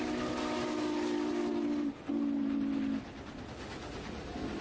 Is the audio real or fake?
real